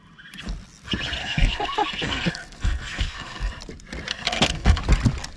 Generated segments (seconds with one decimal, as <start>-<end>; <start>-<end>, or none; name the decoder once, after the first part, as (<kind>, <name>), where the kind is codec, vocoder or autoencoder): 1.2-3.5 (codec, SNAC); 4.1-4.8